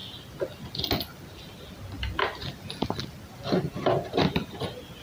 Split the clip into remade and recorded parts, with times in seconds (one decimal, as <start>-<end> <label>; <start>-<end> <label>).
0.0-5.0 recorded